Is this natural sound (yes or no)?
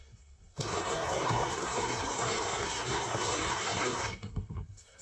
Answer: no